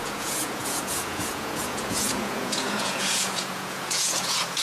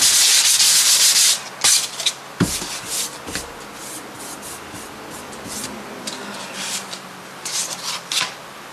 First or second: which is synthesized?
first